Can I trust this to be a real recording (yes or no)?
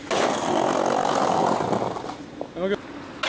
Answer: yes